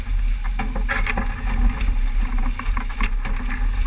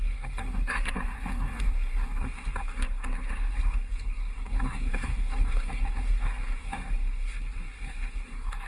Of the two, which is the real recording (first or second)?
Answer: first